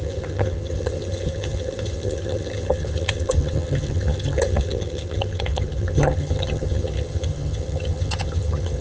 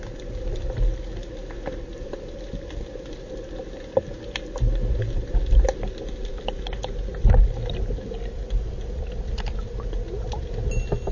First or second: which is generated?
first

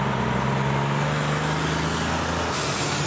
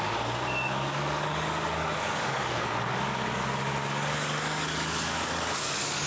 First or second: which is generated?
second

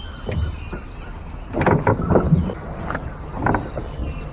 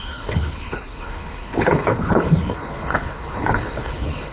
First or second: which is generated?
second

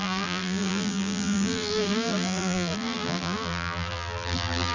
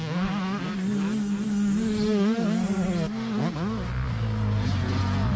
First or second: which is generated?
first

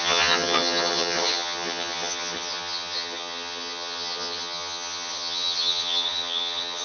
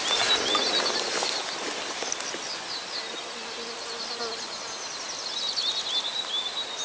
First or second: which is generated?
first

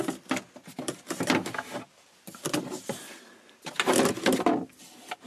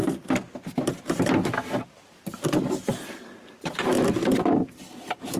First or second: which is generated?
second